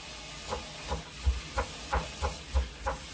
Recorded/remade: recorded